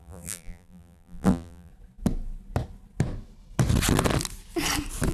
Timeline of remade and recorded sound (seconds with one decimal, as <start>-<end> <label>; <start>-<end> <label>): 0.0-1.7 remade; 1.7-5.1 recorded